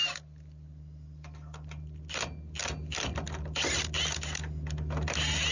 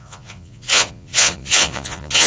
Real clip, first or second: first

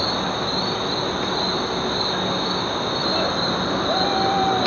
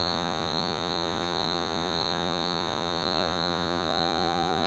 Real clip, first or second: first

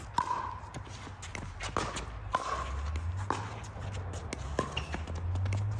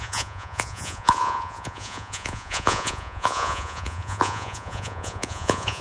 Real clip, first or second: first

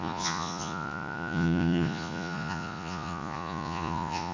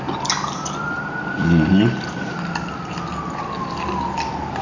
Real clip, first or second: second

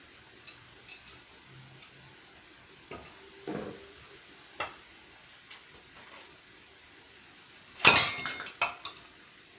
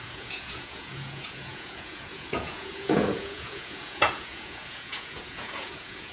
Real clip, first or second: first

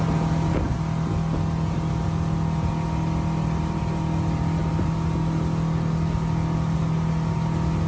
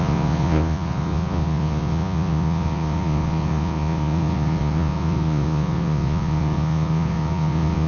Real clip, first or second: first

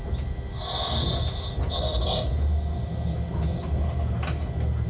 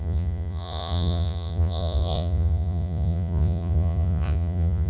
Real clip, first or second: first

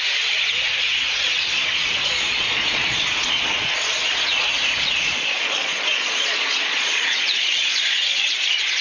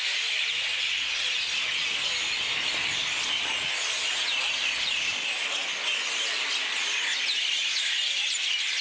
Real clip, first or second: second